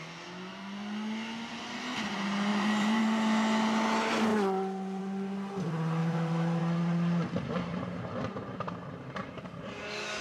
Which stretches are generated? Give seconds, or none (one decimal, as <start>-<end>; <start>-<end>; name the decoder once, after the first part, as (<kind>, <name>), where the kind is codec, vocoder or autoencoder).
2.5-3.0 (vocoder, BigVGAN v2); 6.0-6.6; 7.7-9.5

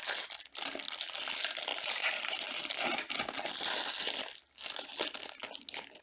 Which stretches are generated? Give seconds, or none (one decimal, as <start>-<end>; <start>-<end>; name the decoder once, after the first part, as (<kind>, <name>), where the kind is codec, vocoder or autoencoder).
1.7-2.9 (vocoder, BigVGAN v2)

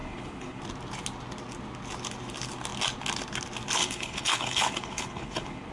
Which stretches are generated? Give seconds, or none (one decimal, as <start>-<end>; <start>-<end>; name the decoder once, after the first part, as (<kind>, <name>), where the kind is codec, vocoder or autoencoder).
0.0-0.6 (codec, HILCodec); 3.8-5.7

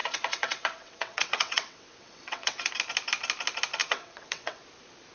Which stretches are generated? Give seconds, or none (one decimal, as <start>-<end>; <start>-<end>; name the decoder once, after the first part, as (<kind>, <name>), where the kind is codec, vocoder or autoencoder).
0.0-2.7 (vocoder, WaveNeXt); 3.8-4.6

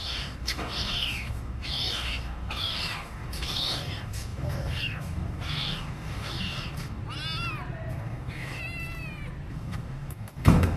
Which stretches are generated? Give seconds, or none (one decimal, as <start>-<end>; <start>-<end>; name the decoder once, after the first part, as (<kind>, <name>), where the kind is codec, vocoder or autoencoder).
0.0-7.0 (codec, DAC); 7.9-8.6; 9.5-10.8

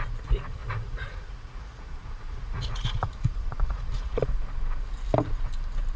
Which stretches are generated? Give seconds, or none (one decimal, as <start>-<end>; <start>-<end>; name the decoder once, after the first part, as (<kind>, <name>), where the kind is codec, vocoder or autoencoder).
0.6-4.2 (vocoder, Vocos)

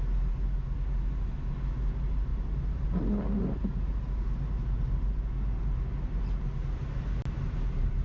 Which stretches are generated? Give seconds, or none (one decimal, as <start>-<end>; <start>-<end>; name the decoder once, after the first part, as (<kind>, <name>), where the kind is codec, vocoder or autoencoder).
none